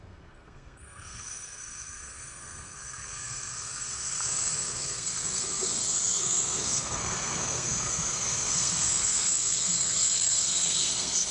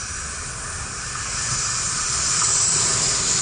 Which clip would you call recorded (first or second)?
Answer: second